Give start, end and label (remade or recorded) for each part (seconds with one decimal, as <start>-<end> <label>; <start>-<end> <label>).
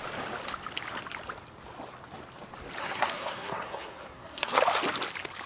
0.0-2.8 recorded; 2.8-4.6 remade; 4.6-5.5 recorded